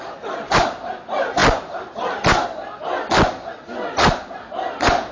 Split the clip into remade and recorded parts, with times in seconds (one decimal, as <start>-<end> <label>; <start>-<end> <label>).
0.0-5.1 recorded